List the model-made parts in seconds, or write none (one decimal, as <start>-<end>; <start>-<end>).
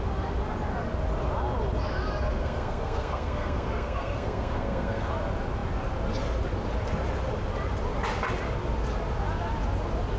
2.4-5.1